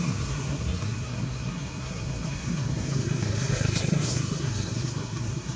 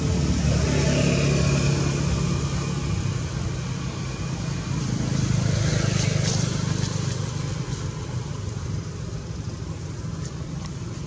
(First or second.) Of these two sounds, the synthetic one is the first